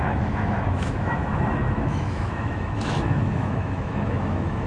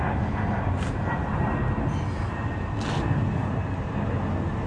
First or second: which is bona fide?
second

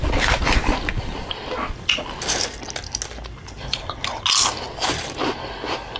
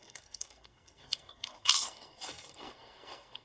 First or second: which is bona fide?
first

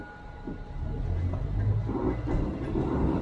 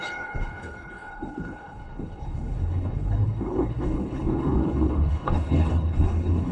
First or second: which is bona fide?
first